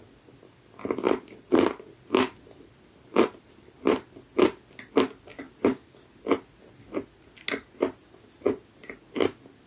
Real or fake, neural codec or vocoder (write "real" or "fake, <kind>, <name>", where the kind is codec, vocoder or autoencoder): real